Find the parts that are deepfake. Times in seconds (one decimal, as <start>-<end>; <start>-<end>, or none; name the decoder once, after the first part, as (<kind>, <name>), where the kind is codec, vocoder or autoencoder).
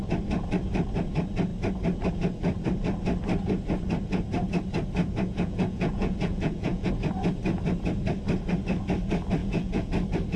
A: 5.3-6.9 (vocoder, Vocos); 9.4-9.9